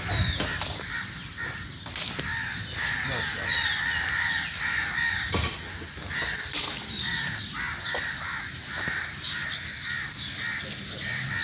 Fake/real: real